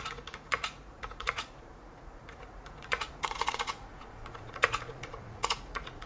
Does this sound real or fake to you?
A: fake